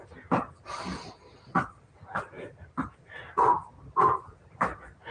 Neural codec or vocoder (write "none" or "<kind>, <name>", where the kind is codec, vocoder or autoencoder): none